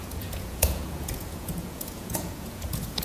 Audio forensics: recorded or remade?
remade